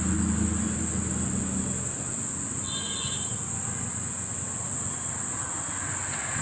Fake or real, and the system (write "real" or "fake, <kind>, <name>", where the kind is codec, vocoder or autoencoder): real